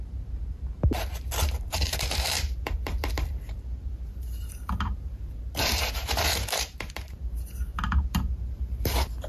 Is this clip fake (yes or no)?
yes